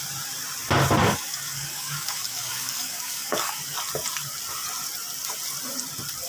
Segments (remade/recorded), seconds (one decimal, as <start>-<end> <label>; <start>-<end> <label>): 0.0-1.0 recorded; 1.0-3.6 remade; 3.6-6.3 recorded